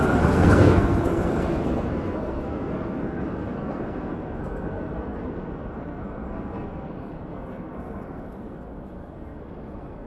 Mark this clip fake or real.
fake